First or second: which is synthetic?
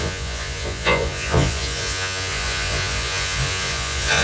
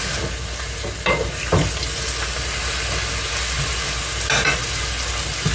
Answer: first